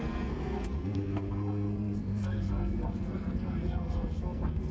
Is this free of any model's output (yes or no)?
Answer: no